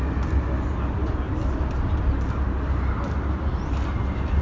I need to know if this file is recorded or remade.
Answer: recorded